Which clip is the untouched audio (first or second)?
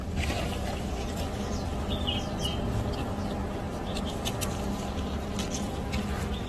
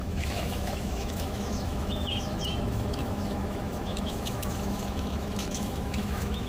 first